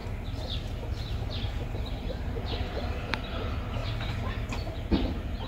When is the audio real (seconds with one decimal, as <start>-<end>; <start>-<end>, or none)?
3.3-3.8; 4.3-5.5